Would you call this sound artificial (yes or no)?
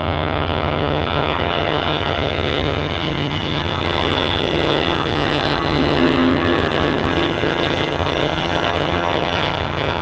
yes